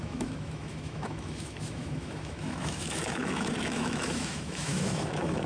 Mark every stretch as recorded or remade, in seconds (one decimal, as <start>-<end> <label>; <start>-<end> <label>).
0.0-5.5 remade